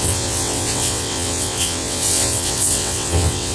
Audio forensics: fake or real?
fake